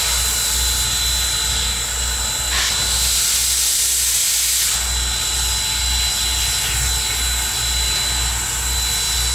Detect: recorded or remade recorded